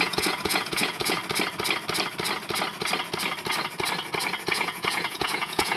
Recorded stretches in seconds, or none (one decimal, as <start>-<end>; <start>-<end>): 1.2-4.4